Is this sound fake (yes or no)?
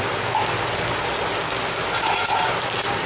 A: no